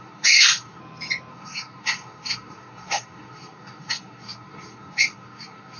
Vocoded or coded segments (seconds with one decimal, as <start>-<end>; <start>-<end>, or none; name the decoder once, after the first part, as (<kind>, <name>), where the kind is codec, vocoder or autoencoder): 0.0-0.8 (codec, SNAC); 1.3-5.8